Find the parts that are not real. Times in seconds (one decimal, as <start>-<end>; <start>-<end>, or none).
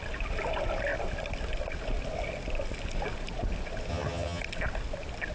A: 3.9-4.4